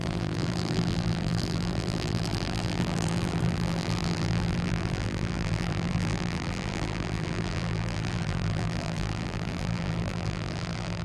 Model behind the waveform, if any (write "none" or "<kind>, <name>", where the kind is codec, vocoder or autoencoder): vocoder, BigVGAN v2